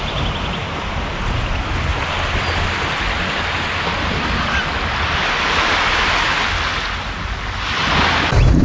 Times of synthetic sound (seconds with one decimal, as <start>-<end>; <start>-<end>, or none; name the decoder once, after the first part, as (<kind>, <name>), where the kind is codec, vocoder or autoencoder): none